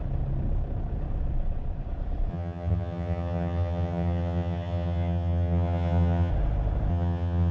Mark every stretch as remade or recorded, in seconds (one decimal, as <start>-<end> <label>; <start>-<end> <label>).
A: 0.0-2.3 recorded; 2.3-6.3 remade; 6.3-6.9 recorded; 6.9-7.5 remade